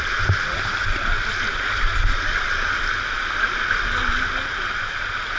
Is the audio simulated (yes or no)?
no